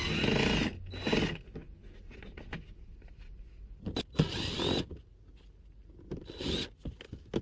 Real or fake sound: real